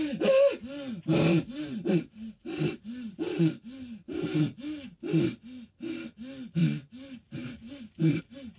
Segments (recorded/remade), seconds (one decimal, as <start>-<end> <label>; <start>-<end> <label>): 0.0-1.1 recorded; 1.1-5.4 remade; 5.4-6.6 recorded; 6.6-8.2 remade; 8.2-8.6 recorded